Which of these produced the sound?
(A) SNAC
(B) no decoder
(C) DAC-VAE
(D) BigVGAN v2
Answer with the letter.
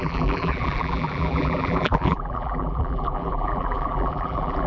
D